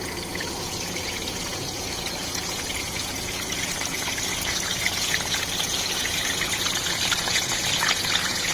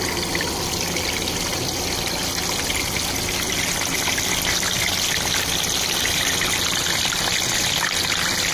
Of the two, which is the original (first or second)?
second